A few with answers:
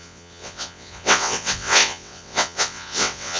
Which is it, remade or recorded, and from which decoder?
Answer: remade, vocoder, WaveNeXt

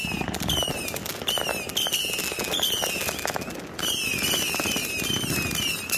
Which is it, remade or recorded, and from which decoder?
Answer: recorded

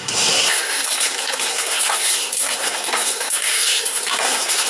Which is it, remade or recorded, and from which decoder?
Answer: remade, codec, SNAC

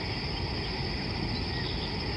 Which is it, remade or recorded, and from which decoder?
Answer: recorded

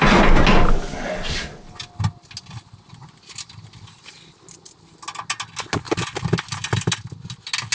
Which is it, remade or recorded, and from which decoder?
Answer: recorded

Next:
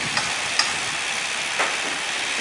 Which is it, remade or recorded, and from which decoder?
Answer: recorded